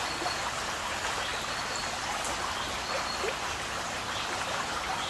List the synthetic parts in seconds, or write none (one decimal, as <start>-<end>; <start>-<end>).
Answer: none